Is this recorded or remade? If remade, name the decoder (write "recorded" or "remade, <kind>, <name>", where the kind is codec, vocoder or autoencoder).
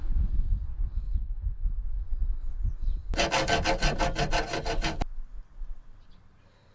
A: recorded